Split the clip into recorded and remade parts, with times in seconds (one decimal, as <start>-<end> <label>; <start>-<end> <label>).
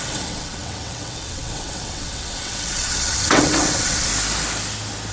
0.0-4.1 remade; 4.1-5.1 recorded